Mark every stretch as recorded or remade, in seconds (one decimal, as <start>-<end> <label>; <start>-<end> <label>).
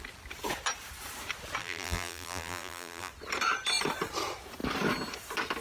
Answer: 0.0-1.6 recorded; 1.6-3.1 remade; 3.1-5.6 recorded